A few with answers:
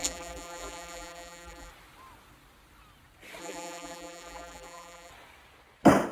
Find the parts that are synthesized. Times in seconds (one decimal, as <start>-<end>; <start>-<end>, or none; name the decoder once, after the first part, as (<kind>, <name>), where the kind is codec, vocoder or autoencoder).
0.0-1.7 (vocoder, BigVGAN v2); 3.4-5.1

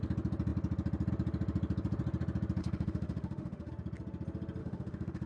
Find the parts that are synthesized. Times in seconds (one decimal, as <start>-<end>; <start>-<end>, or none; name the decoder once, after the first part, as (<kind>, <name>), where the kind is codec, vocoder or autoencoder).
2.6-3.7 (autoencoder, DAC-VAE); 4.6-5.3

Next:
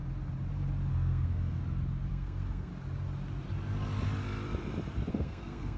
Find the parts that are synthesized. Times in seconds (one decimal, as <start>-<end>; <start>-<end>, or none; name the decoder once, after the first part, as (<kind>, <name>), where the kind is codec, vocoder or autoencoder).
0.9-1.6 (codec, SNAC); 2.1-2.7; 5.1-5.8